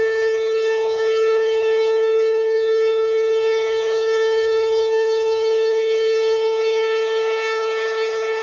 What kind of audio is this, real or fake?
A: fake